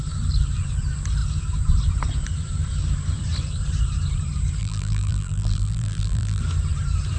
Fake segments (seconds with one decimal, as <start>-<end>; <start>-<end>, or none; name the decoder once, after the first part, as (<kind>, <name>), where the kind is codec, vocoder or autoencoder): 4.6-6.4 (vocoder, BigVGAN v2)